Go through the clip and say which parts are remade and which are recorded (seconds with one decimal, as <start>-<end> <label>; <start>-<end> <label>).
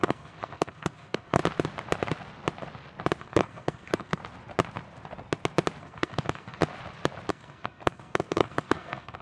0.0-1.4 remade; 1.4-3.2 recorded; 3.2-4.2 remade; 4.2-5.8 recorded; 5.8-6.6 remade; 6.6-7.3 recorded; 7.3-9.2 remade